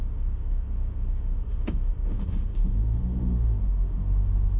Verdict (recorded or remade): remade